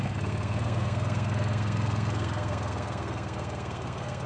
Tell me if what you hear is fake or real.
fake